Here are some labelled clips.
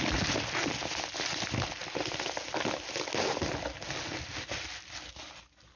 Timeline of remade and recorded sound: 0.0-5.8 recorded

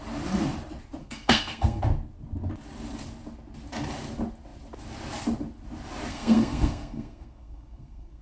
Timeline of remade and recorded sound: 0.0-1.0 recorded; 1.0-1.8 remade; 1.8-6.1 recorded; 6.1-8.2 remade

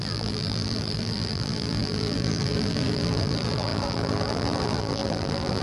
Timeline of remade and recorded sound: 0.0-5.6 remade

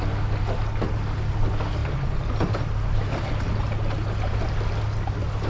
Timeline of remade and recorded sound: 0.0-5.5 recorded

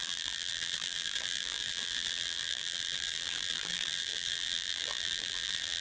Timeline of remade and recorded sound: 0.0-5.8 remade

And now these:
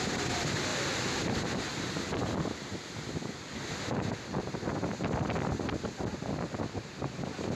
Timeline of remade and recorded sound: 0.0-0.7 remade; 0.7-3.7 recorded; 3.7-4.7 remade; 4.7-7.6 recorded